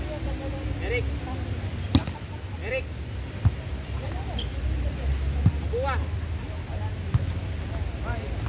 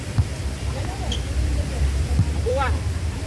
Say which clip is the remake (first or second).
second